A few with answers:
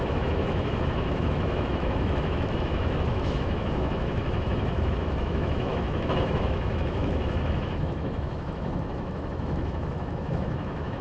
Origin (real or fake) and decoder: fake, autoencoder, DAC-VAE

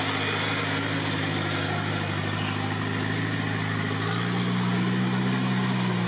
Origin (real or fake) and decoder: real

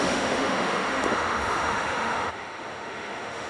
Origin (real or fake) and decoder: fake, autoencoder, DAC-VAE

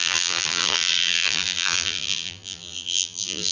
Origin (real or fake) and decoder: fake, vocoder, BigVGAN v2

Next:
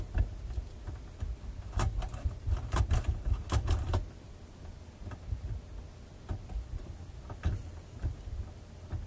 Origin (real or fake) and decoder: real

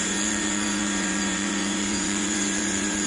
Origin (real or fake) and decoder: fake, vocoder, Vocos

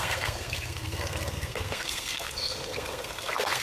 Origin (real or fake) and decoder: fake, codec, SNAC